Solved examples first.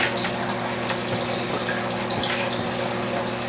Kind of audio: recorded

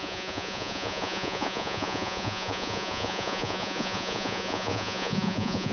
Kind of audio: remade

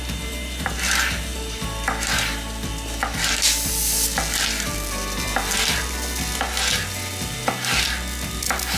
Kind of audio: recorded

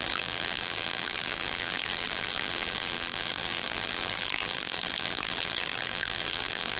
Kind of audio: remade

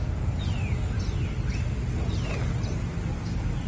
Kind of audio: recorded